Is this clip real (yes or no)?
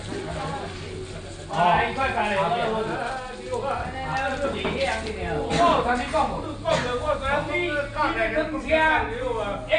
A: yes